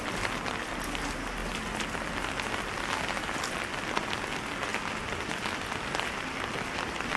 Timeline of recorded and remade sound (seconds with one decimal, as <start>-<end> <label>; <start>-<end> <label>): 0.0-7.2 recorded